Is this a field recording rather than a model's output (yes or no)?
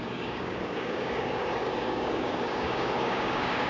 no